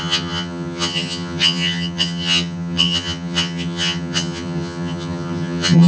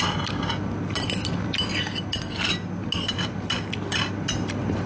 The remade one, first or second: first